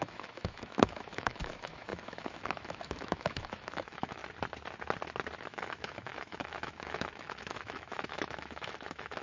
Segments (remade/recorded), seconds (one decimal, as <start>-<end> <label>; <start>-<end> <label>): 0.0-4.2 remade; 4.2-5.4 recorded; 5.4-9.2 remade